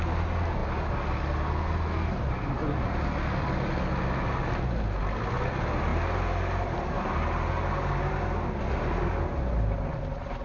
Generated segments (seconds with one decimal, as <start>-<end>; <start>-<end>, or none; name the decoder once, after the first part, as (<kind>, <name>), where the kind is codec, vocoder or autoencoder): none